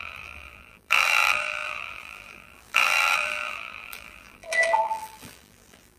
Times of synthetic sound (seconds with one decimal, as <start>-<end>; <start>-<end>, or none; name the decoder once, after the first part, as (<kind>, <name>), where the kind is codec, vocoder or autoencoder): 0.0-6.0 (vocoder, BigVGAN v2)